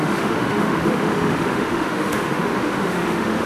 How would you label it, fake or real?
fake